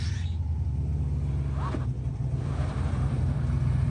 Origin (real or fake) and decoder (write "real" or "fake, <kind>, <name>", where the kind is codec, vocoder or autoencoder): real